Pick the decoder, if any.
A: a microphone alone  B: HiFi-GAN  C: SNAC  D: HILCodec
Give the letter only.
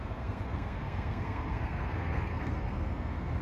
C